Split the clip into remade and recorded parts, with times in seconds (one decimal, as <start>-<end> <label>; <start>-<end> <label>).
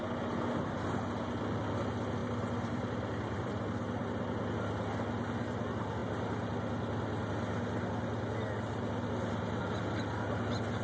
0.0-2.2 recorded; 2.2-3.5 remade; 3.5-10.8 recorded